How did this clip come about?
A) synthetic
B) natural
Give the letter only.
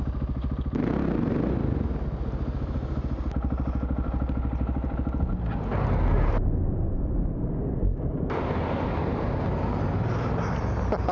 B